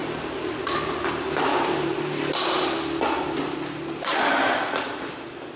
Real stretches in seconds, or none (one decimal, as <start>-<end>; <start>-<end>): 0.6-1.5; 2.0-5.6